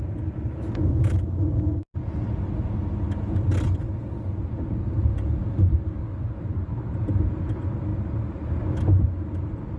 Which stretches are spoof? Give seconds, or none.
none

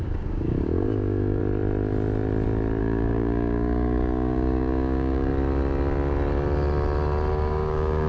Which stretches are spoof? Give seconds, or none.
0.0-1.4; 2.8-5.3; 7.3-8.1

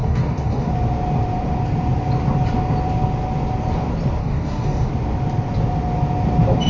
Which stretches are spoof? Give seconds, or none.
0.0-0.7; 4.2-4.9

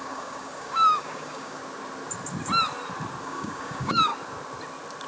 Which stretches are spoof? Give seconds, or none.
0.0-1.6; 3.2-4.1

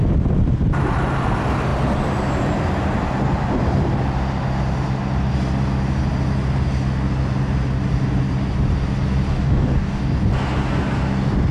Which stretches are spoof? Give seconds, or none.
9.3-10.0

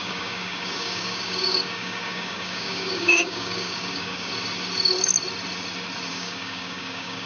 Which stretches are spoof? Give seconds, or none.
0.0-4.3; 6.1-7.3

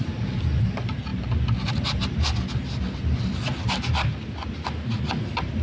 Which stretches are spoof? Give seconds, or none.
none